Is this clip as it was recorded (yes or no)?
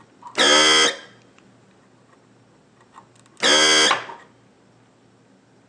yes